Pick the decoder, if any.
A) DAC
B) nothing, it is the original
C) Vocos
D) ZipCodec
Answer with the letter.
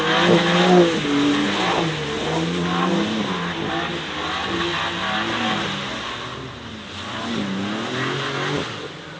B